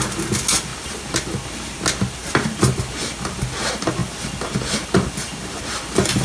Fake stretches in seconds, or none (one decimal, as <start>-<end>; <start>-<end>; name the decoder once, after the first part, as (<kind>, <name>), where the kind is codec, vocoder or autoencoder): 0.7-1.4 (vocoder, BigVGAN v2); 2.2-3.0